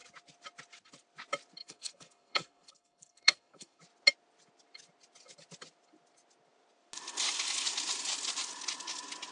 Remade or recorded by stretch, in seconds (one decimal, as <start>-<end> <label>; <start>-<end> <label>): 0.0-1.6 recorded; 1.6-3.8 remade; 3.8-9.3 recorded